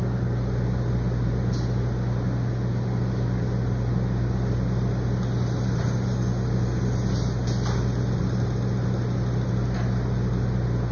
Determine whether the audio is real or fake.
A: real